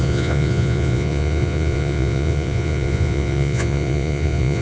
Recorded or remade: remade